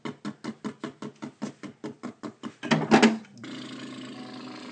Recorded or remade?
recorded